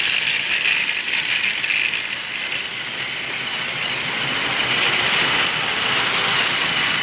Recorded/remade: recorded